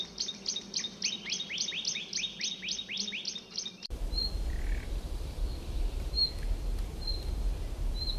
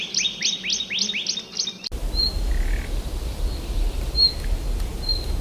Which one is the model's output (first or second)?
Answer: first